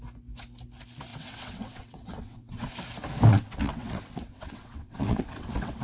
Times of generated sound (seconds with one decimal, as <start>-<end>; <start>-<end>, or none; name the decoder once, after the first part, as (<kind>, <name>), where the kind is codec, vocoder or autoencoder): 1.1-2.7 (vocoder, WaveNeXt); 3.3-5.8